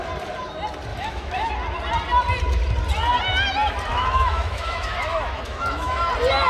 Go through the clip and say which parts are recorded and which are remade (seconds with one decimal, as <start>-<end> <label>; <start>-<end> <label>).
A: 0.0-0.9 recorded; 0.9-1.5 remade; 1.5-3.9 recorded; 3.9-6.1 remade; 6.1-6.5 recorded